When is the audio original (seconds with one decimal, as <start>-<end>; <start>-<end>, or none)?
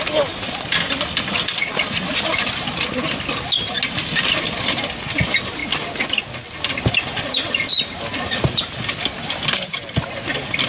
0.0-10.7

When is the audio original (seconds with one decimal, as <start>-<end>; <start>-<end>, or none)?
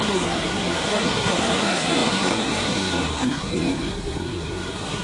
none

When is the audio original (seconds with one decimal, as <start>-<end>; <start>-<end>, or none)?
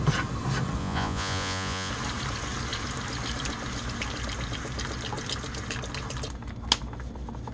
0.0-0.8; 1.9-7.5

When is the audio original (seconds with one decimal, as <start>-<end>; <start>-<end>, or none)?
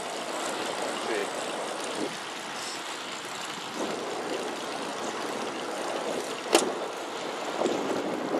0.0-8.4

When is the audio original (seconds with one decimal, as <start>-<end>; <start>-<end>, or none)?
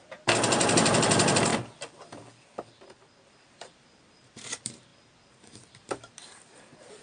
1.5-3.3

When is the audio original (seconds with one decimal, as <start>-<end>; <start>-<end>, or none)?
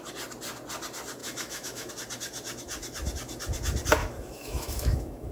0.0-1.2; 1.9-4.0